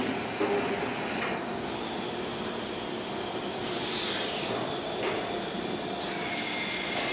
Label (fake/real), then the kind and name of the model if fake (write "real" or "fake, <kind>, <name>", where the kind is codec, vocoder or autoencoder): real